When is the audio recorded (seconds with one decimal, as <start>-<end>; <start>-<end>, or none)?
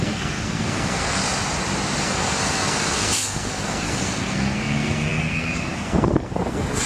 1.2-2.0